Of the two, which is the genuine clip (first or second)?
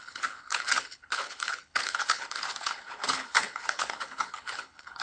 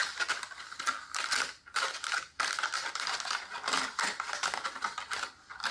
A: second